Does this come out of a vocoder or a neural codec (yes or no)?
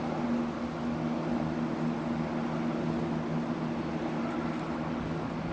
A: no